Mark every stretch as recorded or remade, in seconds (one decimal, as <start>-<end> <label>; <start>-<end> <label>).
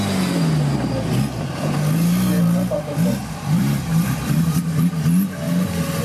0.0-3.2 recorded; 3.2-4.9 remade; 4.9-6.0 recorded